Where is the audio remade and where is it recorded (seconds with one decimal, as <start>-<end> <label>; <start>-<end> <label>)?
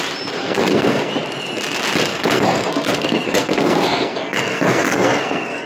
0.0-0.4 recorded; 0.4-1.1 remade; 1.1-2.1 recorded; 2.1-5.7 remade